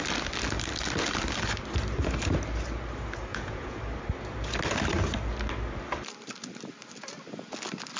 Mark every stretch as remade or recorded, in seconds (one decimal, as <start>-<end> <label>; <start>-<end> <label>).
0.0-3.3 recorded; 3.3-3.8 remade; 3.8-8.0 recorded